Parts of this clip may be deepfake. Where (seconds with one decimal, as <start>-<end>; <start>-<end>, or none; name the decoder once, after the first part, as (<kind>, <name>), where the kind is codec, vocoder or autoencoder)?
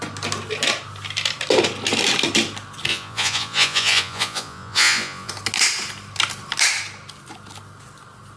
2.9-5.3 (vocoder, Vocos)